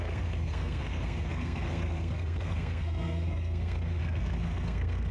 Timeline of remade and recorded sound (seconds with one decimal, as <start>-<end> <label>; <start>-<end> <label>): 0.0-5.1 remade

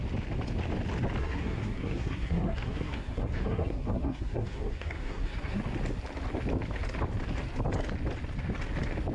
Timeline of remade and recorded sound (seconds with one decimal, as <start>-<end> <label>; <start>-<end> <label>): 0.0-1.2 recorded; 1.2-5.6 remade; 5.6-9.1 recorded

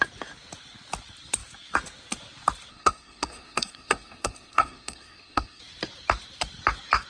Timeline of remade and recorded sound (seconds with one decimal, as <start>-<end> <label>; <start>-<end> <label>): 0.0-2.7 recorded; 2.7-5.6 remade; 5.6-7.1 recorded

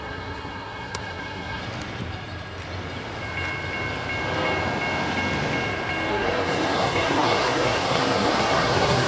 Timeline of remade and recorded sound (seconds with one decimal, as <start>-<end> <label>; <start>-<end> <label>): 0.0-1.6 remade; 1.6-6.1 recorded; 6.1-9.1 remade

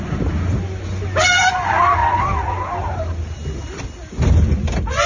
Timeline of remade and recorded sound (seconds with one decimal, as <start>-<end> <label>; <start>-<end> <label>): 0.0-5.1 recorded

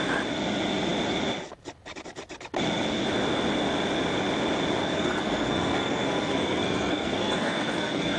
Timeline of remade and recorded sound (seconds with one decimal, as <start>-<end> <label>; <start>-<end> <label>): 0.0-4.8 recorded; 4.8-8.2 remade

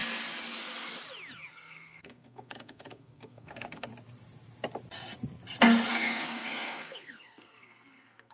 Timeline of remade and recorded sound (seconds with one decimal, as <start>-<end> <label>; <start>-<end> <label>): 0.0-1.5 recorded; 1.5-3.9 remade; 3.9-5.9 recorded; 5.9-8.3 remade

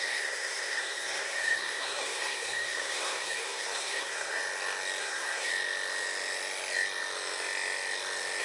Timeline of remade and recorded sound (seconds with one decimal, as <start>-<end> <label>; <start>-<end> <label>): 0.0-4.4 remade; 4.4-5.0 recorded; 5.0-5.5 remade; 5.5-8.4 recorded